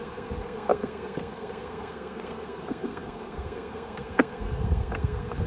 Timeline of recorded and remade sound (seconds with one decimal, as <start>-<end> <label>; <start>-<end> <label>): 0.0-5.5 remade